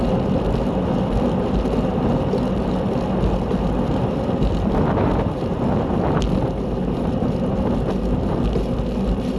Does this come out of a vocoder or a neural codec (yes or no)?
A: no